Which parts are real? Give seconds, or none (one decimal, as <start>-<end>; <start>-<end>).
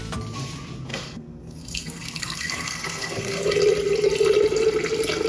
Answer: 0.0-0.9; 3.4-5.3